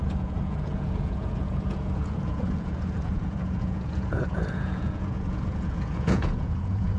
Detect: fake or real fake